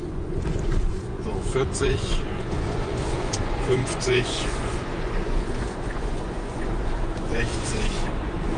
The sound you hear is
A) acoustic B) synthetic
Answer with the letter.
B